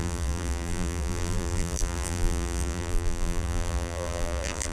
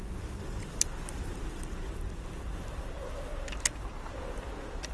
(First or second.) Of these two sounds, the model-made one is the first